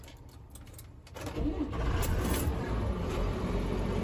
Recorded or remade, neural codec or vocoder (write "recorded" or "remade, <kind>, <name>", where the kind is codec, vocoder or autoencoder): recorded